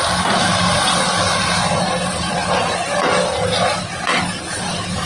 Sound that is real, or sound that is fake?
real